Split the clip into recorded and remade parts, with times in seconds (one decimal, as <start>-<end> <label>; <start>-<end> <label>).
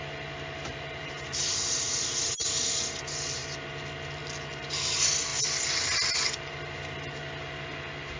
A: 0.0-0.7 recorded; 0.7-2.5 remade; 2.5-8.2 recorded